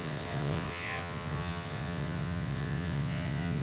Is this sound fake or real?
fake